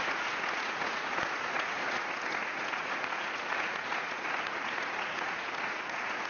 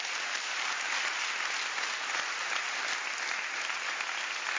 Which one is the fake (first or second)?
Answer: first